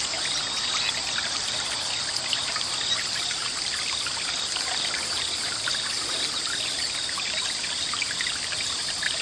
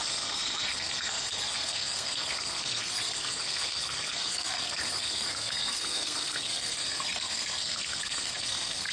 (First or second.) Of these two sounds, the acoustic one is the first